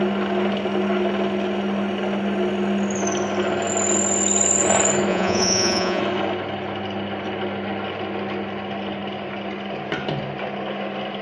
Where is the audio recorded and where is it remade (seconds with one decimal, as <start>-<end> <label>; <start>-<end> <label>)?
0.0-5.1 recorded; 5.1-6.0 remade; 6.0-11.2 recorded